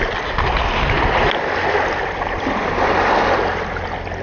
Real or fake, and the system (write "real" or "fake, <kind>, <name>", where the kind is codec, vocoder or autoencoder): real